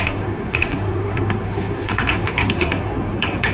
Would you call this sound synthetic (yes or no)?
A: yes